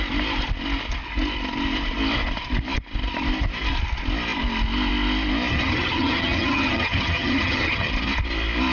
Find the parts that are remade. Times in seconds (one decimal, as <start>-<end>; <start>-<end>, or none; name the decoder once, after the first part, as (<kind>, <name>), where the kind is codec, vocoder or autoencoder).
5.5-7.9 (vocoder, HiFi-GAN)